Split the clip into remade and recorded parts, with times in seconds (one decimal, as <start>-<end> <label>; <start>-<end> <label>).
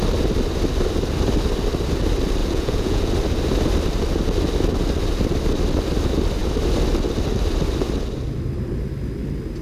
0.0-2.4 recorded; 2.4-3.1 remade; 3.1-9.6 recorded